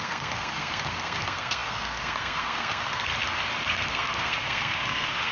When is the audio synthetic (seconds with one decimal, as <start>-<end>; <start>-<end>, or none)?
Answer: 0.0-3.1; 3.6-5.3